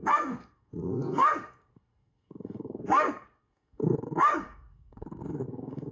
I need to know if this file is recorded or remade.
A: remade